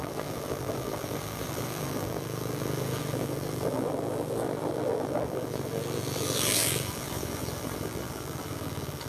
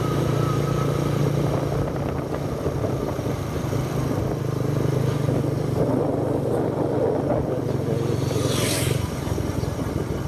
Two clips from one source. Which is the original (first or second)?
second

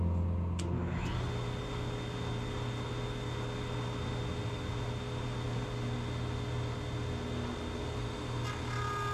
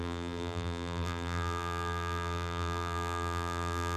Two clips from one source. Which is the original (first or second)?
first